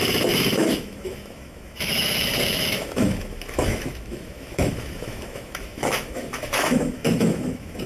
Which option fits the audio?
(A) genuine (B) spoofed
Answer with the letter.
B